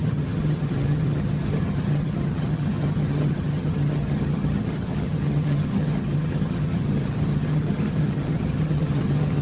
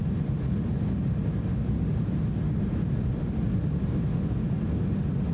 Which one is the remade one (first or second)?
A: first